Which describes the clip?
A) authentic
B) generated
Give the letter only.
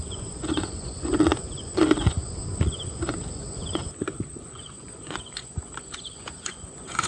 B